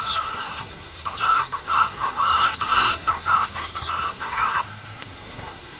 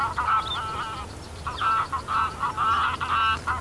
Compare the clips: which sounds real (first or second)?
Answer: second